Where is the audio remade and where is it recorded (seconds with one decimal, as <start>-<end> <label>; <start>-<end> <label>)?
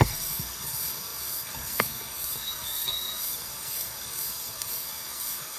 0.0-5.6 remade